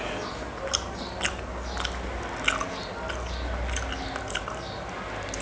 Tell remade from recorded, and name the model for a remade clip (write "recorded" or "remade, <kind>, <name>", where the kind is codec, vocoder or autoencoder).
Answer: recorded